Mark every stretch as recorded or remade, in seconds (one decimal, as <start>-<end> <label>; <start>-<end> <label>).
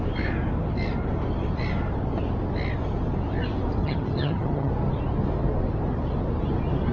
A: 0.0-3.8 recorded; 3.8-4.7 remade; 4.7-6.9 recorded